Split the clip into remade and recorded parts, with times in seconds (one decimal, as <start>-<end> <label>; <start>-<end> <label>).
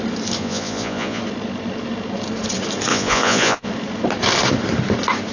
0.0-0.4 recorded; 0.4-1.2 remade; 1.2-2.9 recorded; 2.9-3.7 remade; 3.7-5.3 recorded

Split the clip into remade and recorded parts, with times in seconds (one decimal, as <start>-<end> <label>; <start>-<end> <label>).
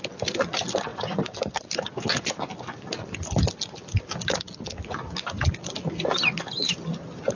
0.0-0.9 recorded; 0.9-1.8 remade; 1.8-7.4 recorded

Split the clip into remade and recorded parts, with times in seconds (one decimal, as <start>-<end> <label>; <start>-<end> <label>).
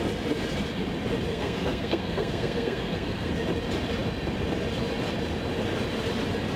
0.0-1.3 recorded; 1.3-3.3 remade; 3.3-6.6 recorded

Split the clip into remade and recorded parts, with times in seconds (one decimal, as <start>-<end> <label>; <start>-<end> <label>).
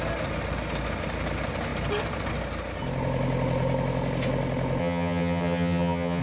0.0-4.8 recorded; 4.8-6.2 remade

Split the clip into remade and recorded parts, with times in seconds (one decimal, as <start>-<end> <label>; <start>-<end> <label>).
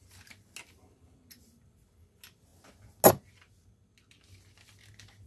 0.0-5.3 recorded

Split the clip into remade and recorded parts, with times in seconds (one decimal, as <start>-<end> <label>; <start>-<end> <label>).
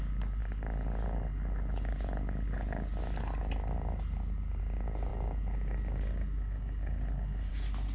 0.0-7.9 recorded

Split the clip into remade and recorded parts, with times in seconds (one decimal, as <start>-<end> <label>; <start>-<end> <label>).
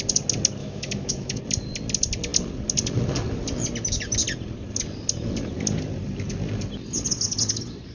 0.0-0.6 recorded; 0.6-1.4 remade; 1.4-7.9 recorded